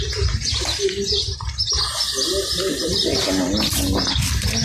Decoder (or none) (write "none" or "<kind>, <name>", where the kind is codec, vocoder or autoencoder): none